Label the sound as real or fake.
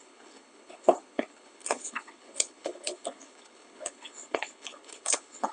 fake